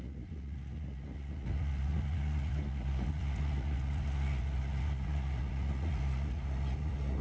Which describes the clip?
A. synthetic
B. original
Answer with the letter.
A